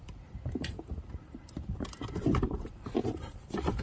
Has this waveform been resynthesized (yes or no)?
yes